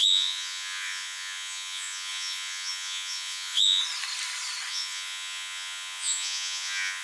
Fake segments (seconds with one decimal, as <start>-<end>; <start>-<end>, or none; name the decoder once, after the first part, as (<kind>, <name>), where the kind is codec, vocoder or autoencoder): 0.0-3.8 (vocoder, Vocos); 4.7-7.0